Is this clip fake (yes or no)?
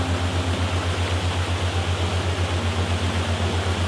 no